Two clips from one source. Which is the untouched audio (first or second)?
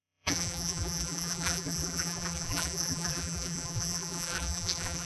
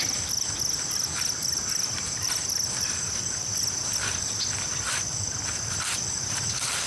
second